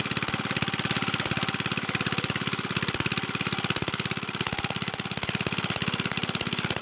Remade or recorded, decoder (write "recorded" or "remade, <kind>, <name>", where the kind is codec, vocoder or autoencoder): recorded